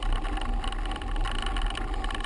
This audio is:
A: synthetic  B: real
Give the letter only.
B